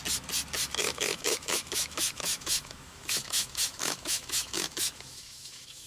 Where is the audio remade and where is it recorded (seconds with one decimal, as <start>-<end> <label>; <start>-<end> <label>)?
0.0-0.8 recorded; 0.8-5.9 remade